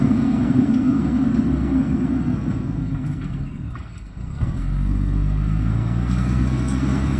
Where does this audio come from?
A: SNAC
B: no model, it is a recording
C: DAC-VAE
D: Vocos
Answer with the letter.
A